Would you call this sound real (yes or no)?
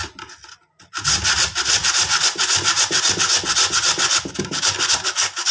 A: yes